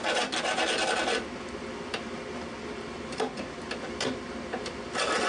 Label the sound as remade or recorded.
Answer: recorded